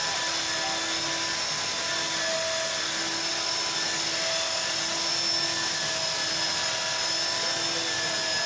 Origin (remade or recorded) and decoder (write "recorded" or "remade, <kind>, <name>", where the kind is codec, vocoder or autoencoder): recorded